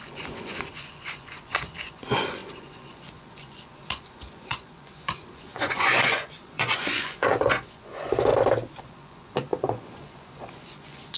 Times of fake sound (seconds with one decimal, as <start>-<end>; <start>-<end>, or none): 0.0-8.3; 8.8-11.2